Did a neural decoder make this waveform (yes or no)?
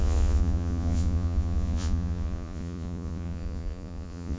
yes